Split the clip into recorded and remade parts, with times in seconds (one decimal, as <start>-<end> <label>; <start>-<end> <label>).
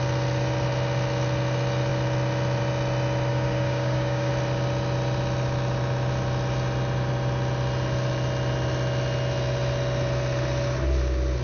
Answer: 0.0-3.3 recorded; 3.3-4.3 remade; 4.3-11.4 recorded